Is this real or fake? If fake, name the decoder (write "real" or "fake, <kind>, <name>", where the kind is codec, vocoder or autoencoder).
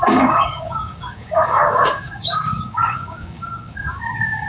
fake, codec, DAC